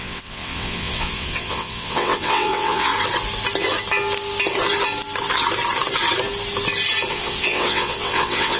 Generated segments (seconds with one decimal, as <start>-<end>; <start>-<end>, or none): 0.0-2.9; 7.1-8.6